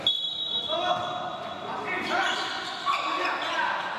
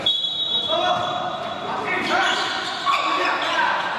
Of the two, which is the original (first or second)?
first